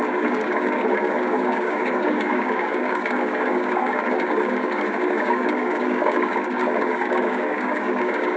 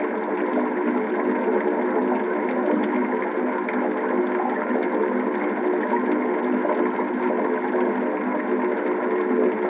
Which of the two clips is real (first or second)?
second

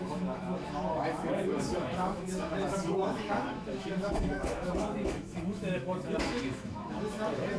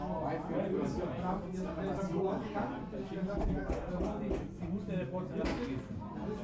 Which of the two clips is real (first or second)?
second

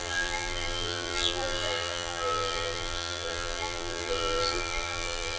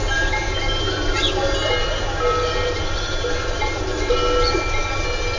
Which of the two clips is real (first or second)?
second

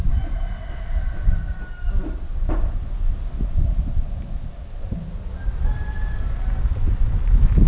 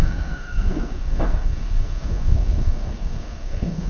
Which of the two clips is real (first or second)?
first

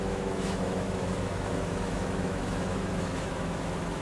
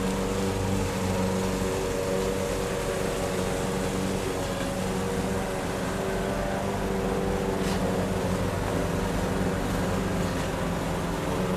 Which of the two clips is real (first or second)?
second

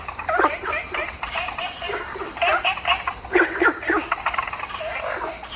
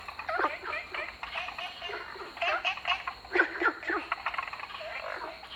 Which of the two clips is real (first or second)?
second